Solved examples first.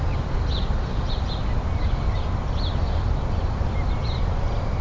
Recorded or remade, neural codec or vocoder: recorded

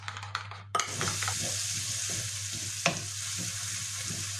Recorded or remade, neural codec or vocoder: recorded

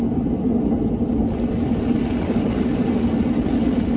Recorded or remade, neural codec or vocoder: recorded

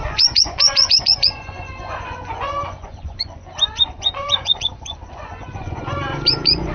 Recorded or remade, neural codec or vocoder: remade, vocoder, Vocos